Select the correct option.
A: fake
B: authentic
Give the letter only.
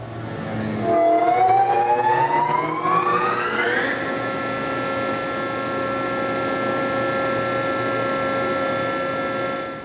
B